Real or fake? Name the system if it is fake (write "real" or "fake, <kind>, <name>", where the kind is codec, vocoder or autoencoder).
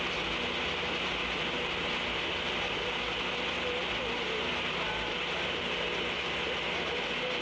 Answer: real